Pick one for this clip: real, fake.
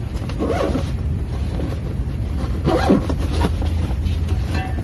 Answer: real